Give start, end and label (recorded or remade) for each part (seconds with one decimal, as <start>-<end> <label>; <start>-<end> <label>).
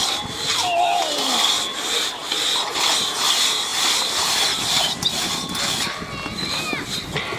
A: 0.0-3.7 recorded; 3.7-5.0 remade; 5.0-7.4 recorded